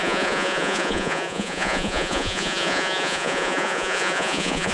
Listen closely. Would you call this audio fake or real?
fake